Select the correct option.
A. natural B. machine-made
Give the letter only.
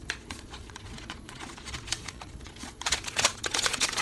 B